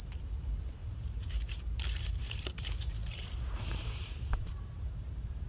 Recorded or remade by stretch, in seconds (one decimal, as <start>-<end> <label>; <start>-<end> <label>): 0.0-0.8 recorded; 0.8-1.7 remade; 1.7-2.2 recorded; 2.2-5.5 remade